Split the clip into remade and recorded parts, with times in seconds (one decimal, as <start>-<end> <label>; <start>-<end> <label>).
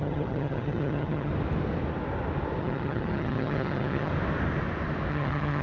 0.0-1.3 remade; 1.3-2.6 recorded; 2.6-4.1 remade; 4.1-5.1 recorded; 5.1-5.6 remade